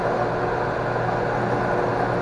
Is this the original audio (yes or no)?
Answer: yes